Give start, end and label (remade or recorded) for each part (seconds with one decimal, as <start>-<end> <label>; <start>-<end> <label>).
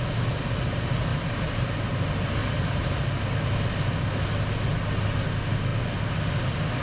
0.0-1.1 recorded; 1.1-1.8 remade; 1.8-2.4 recorded; 2.4-3.0 remade; 3.0-6.8 recorded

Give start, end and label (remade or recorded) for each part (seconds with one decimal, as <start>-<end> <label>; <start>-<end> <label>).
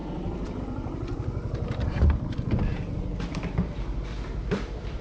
0.0-0.6 recorded; 0.6-5.0 remade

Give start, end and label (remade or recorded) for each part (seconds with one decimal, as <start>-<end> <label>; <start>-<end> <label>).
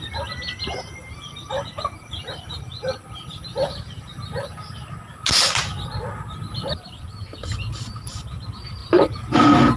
0.0-2.7 remade; 2.7-6.5 recorded; 6.5-9.8 remade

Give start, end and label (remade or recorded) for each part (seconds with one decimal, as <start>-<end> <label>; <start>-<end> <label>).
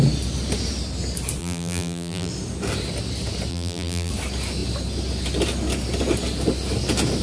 0.0-1.4 recorded; 1.4-2.3 remade; 2.3-3.5 recorded; 3.5-4.1 remade; 4.1-7.2 recorded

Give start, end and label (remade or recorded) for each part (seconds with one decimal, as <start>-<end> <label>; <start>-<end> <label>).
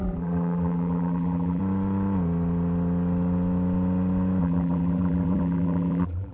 0.0-1.6 remade; 1.6-4.4 recorded; 4.4-6.3 remade